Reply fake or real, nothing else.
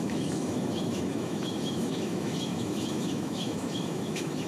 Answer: fake